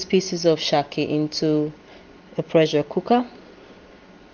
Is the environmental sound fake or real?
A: real